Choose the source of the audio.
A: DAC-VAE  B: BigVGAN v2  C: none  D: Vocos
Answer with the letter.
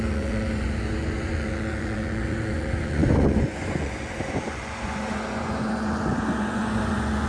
D